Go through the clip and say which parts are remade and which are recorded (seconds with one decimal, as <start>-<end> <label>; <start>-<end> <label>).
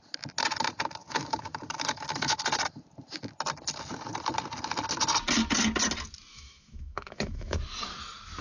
0.0-1.0 recorded; 1.0-2.4 remade; 2.4-6.3 recorded; 6.3-7.6 remade; 7.6-8.4 recorded